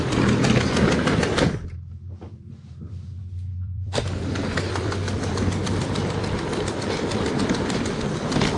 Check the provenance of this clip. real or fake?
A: fake